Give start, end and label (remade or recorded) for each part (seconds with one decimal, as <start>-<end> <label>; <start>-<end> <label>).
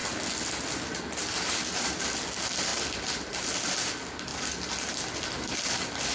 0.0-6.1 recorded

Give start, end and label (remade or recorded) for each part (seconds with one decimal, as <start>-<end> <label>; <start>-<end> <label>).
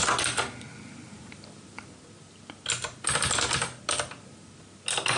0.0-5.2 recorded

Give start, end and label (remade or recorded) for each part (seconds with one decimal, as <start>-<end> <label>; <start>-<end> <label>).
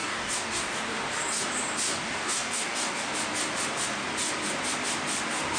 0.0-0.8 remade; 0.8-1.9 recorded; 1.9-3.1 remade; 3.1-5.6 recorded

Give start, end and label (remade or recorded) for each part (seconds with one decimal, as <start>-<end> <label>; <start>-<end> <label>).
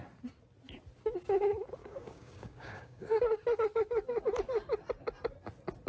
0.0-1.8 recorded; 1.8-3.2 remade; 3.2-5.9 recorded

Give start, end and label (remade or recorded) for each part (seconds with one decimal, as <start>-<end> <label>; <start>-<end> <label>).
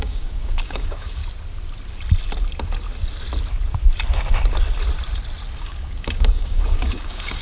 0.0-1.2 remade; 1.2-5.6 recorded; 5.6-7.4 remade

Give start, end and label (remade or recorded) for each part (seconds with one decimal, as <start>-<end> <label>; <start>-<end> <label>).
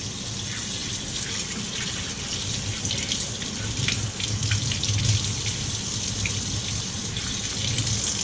0.0-8.2 recorded